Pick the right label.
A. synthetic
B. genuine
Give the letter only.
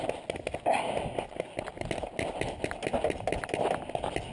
B